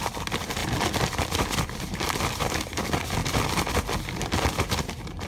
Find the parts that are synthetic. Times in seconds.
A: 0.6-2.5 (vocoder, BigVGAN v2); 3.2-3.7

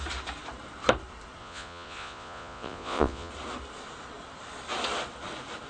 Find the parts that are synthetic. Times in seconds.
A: 1.4-3.3 (vocoder, Vocos)